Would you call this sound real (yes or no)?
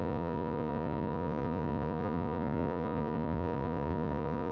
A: no